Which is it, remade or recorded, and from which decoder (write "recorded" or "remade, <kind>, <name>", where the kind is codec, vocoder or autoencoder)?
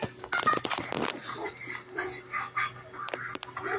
recorded